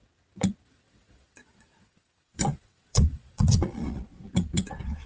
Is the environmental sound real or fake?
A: fake